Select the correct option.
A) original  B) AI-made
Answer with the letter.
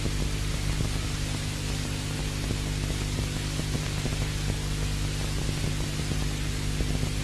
A